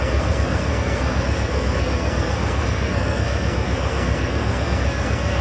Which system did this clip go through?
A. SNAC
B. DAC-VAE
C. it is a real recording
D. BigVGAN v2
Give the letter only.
A